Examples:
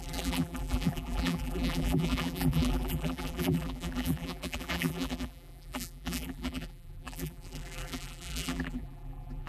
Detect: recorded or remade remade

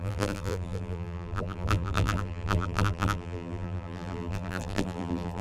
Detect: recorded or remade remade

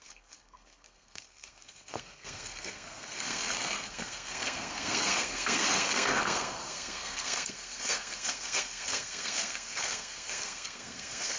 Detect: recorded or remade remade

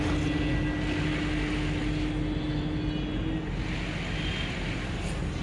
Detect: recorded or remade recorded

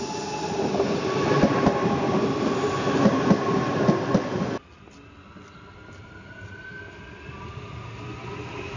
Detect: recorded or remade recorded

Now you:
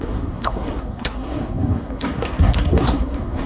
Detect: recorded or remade remade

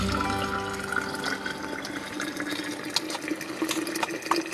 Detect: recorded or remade recorded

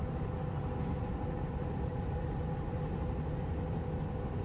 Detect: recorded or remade recorded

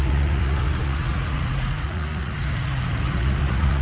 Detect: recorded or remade remade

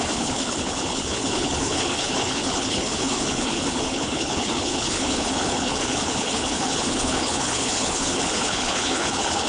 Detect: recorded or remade remade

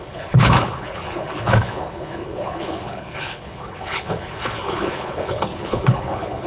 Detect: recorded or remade remade